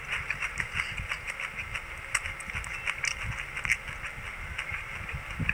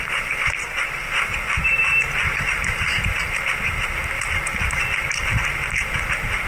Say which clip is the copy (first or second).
second